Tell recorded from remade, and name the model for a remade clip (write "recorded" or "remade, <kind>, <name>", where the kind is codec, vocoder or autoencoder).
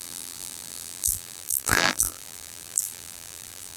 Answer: remade, vocoder, BigVGAN v2